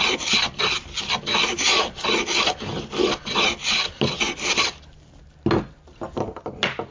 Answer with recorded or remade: recorded